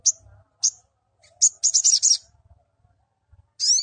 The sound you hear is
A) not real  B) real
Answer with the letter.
B